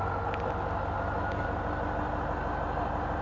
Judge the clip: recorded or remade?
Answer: recorded